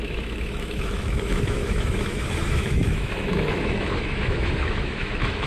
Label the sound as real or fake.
fake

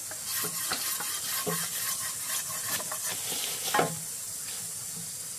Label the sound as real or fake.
real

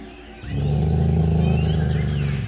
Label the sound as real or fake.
real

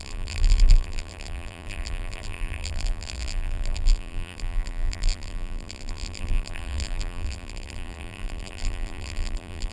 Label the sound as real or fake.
fake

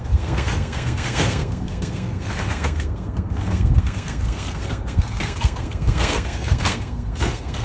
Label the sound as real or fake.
fake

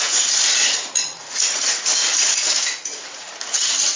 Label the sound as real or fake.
fake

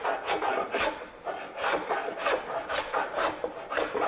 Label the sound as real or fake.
real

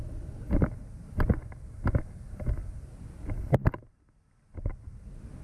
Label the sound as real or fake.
real